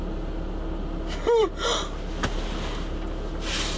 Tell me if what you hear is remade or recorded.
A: recorded